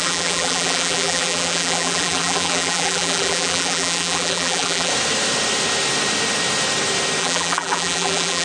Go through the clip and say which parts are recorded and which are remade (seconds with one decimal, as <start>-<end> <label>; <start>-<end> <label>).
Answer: 0.0-4.9 remade; 4.9-7.2 recorded; 7.2-8.4 remade